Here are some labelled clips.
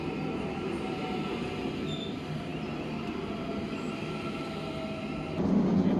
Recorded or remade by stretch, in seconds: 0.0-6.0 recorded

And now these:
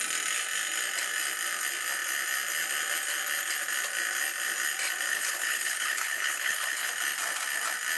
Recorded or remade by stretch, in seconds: 0.0-5.1 recorded; 5.1-6.9 remade; 6.9-8.0 recorded

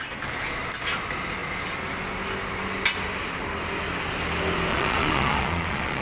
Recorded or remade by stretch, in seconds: 0.0-4.7 recorded; 4.7-6.0 remade

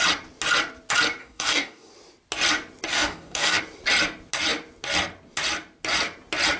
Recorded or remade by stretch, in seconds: 0.0-1.2 recorded; 1.2-1.9 remade; 1.9-2.9 recorded; 2.9-3.6 remade; 3.6-6.6 recorded

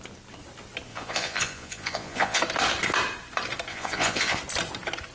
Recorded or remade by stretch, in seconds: 0.0-0.9 recorded; 0.9-2.4 remade; 2.4-3.7 recorded; 3.7-4.4 remade; 4.4-5.1 recorded